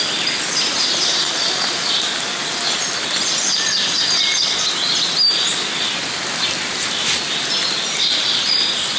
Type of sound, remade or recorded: recorded